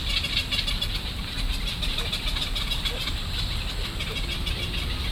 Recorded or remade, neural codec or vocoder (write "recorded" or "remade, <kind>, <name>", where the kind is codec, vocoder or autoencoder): recorded